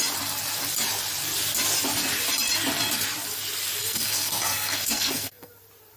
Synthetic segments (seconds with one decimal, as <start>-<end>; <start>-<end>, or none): 3.8-5.5